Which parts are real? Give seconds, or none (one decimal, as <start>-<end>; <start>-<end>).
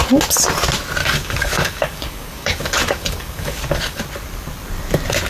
0.0-1.0; 4.0-5.3